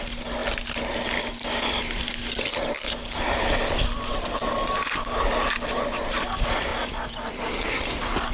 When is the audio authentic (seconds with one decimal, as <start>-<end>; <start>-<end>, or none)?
0.0-6.7; 7.4-8.3